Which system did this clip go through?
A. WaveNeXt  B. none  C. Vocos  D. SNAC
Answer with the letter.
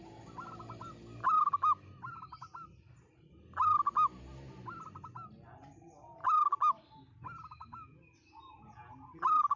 B